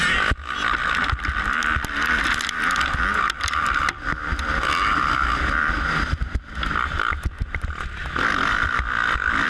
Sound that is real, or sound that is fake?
real